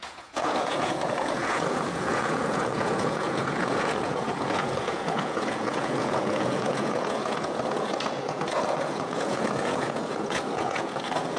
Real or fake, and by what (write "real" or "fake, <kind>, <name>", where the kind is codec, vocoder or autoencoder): fake, vocoder, Vocos